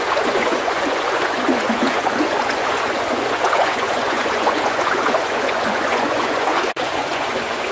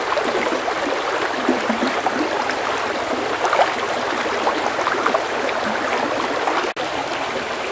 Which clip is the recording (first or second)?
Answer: second